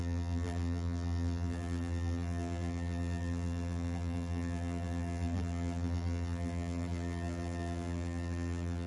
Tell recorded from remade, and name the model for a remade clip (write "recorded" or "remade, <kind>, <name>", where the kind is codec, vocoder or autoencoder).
remade, vocoder, BigVGAN v2